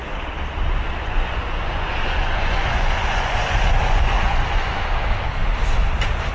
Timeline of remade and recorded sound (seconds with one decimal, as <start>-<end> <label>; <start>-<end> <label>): 0.0-1.0 recorded; 1.0-4.8 remade; 4.8-6.3 recorded